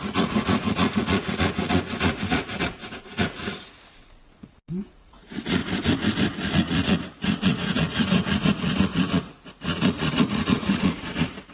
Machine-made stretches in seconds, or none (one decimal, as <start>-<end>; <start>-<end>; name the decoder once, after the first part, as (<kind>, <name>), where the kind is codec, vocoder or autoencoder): 0.0-5.6 (vocoder, Vocos); 6.5-11.5